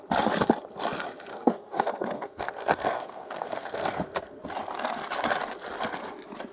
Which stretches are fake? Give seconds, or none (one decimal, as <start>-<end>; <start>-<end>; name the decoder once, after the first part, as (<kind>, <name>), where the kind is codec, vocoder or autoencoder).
1.3-4.4 (codec, SNAC)